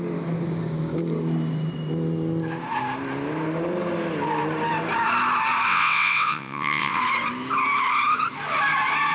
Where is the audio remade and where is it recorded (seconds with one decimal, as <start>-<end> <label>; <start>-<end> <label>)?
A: 0.0-5.7 recorded; 5.7-7.0 remade; 7.0-9.1 recorded

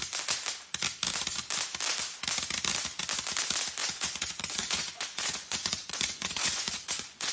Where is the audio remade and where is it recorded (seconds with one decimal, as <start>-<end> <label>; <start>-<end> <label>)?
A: 0.0-3.8 recorded; 3.8-7.3 remade

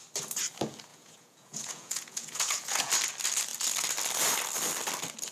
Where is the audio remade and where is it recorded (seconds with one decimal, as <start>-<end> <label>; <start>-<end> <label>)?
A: 0.0-0.9 recorded; 0.9-2.9 remade; 2.9-5.3 recorded